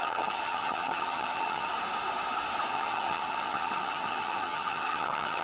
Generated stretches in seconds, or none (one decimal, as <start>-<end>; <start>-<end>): 0.0-1.7; 2.7-5.4